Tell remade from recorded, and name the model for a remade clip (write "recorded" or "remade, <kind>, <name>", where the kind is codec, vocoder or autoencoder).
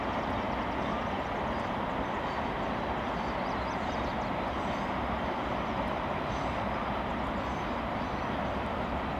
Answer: recorded